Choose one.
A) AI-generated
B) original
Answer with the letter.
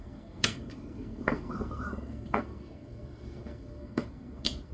A